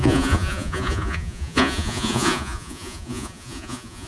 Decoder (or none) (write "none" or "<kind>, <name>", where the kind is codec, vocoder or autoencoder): vocoder, Vocos